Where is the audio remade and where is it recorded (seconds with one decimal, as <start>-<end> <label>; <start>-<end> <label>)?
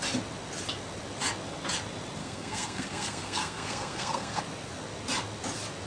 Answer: 0.0-2.2 recorded; 2.2-4.4 remade; 4.4-5.9 recorded